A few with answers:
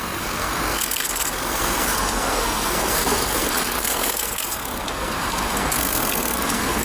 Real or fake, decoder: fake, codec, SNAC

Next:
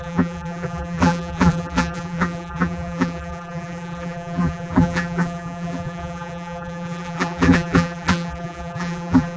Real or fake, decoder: fake, vocoder, BigVGAN v2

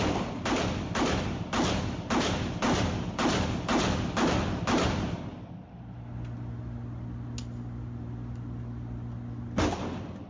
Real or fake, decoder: real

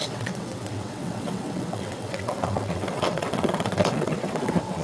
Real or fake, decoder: fake, vocoder, WaveNeXt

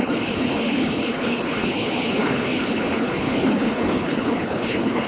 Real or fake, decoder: fake, codec, HILCodec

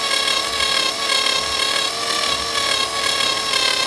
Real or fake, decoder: real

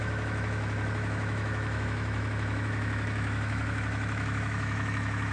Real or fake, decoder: fake, autoencoder, DAC-VAE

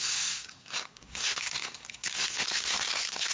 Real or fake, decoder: fake, codec, SNAC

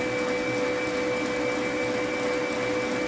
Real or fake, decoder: real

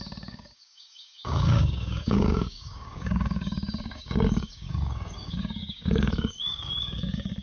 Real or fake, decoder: fake, codec, DAC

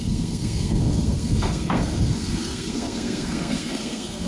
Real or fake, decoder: fake, codec, SNAC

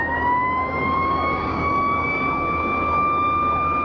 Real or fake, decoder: fake, codec, DAC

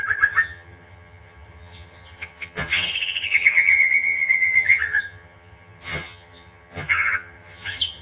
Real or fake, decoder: fake, vocoder, HiFi-GAN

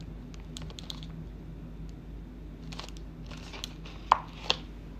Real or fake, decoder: real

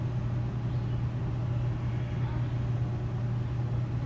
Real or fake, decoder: real